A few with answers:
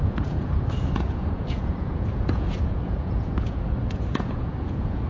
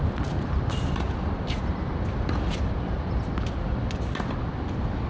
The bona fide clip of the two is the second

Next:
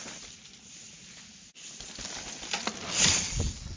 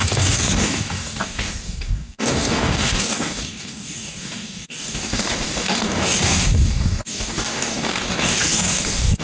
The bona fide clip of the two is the first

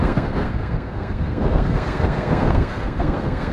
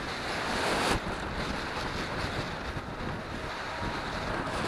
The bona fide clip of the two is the second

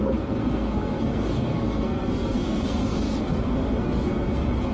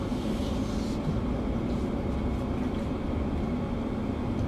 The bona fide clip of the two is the second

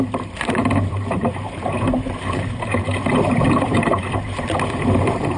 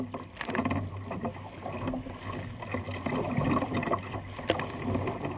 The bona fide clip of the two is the second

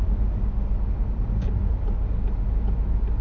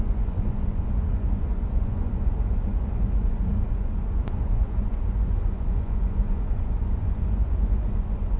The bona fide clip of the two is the first